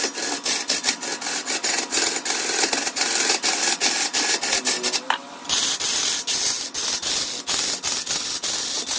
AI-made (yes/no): no